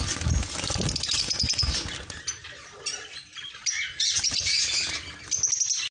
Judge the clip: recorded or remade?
recorded